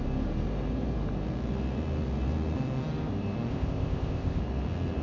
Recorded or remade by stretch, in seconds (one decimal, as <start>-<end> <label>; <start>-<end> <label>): 0.0-3.5 recorded; 3.5-4.4 remade; 4.4-5.0 recorded